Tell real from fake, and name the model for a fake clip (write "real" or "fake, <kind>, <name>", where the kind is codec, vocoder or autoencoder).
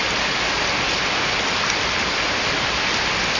real